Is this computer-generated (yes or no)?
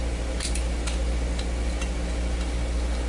no